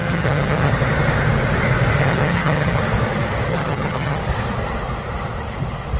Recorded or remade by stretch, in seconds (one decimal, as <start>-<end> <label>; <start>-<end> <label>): 0.0-0.7 remade; 0.7-2.0 recorded; 2.0-2.8 remade; 2.8-3.5 recorded; 3.5-4.2 remade; 4.2-6.0 recorded